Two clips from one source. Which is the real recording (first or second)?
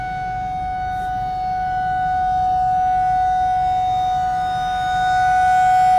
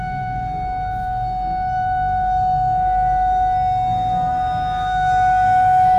first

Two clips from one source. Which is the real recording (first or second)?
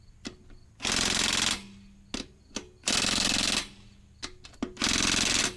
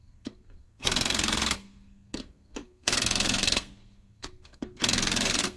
first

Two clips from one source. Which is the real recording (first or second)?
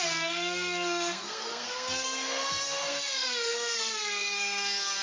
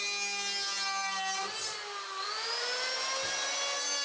second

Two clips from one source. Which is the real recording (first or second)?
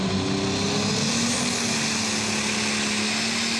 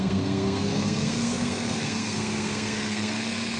first